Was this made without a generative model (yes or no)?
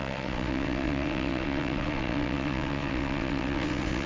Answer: no